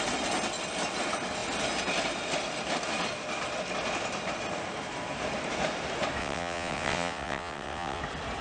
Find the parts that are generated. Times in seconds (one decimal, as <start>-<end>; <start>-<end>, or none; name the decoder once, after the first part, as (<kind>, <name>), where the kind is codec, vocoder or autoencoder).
6.2-8.0 (vocoder, WaveNeXt)